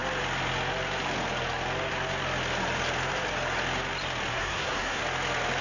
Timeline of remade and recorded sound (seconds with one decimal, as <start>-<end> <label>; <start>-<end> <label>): 0.0-4.3 recorded; 4.3-5.0 remade; 5.0-5.6 recorded